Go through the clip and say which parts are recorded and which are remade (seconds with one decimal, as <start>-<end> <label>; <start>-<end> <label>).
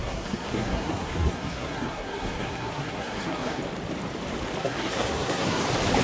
0.0-3.6 remade; 3.6-4.6 recorded; 4.6-5.6 remade; 5.6-6.0 recorded